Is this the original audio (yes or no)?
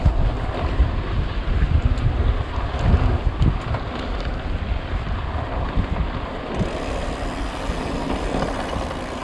yes